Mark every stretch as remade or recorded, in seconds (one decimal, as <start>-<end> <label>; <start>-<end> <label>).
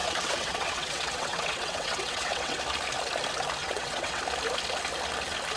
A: 0.0-2.6 remade; 2.6-3.6 recorded; 3.6-4.2 remade; 4.2-5.6 recorded